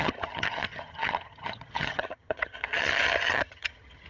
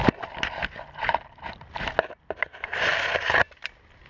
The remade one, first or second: first